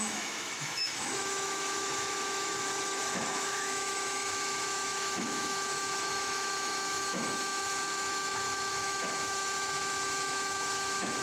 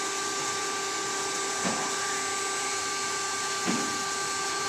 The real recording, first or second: second